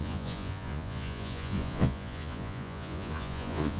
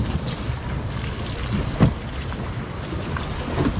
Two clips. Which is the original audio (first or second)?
second